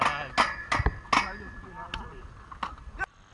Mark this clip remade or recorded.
recorded